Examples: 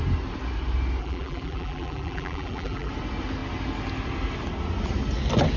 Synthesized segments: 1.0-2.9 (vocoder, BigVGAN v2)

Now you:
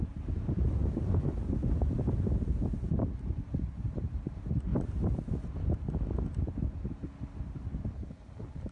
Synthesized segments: 0.0-0.8 (vocoder, BigVGAN v2); 1.6-4.7

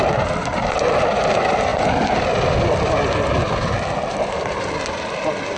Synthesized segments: none